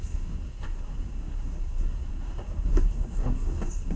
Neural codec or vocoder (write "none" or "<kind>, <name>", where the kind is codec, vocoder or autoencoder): codec, SNAC